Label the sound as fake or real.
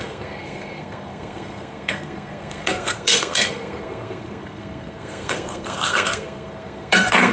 fake